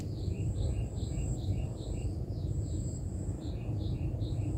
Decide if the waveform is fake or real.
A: fake